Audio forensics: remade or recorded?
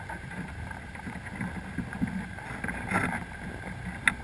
recorded